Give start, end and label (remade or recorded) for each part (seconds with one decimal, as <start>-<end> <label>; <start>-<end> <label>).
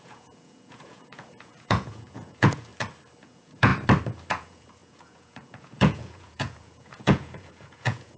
0.0-2.7 remade; 2.7-3.2 recorded; 3.2-3.7 remade; 3.7-4.3 recorded; 4.3-8.2 remade